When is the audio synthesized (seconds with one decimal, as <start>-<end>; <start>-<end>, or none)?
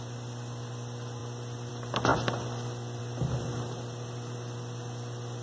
2.1-3.0